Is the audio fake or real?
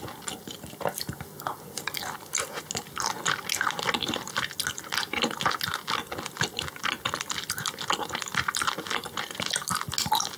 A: real